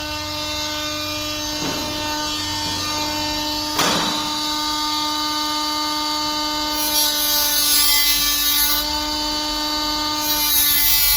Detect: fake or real real